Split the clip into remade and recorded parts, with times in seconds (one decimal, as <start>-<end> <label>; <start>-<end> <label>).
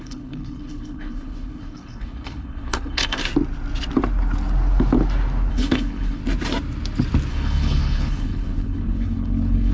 0.0-3.2 remade; 3.2-5.5 recorded; 5.5-6.2 remade; 6.2-7.3 recorded; 7.3-9.7 remade